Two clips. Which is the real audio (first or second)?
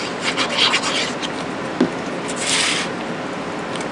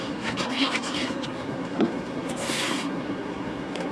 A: first